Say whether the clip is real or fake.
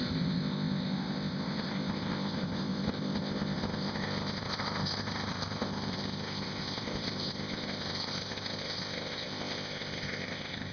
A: fake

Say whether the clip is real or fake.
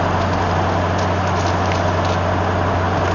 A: real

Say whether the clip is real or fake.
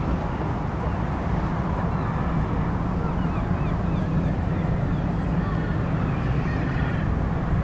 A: real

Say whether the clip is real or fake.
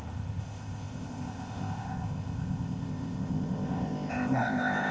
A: fake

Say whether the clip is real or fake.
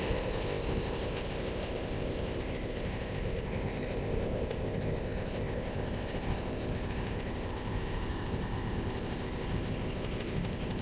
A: fake